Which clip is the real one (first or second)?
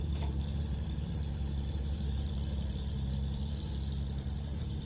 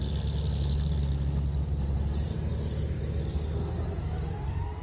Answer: second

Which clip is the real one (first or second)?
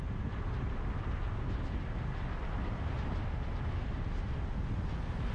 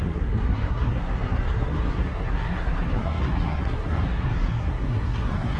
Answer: first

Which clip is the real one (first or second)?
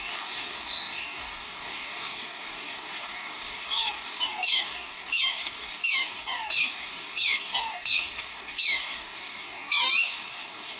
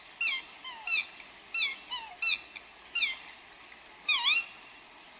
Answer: second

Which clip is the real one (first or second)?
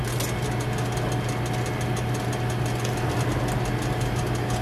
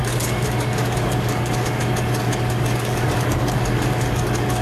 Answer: first